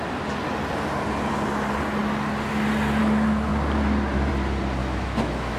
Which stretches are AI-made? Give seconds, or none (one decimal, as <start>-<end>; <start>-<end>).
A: 4.8-5.6